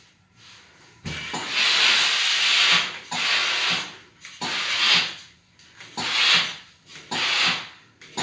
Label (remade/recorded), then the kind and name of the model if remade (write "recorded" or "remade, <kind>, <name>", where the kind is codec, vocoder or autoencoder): recorded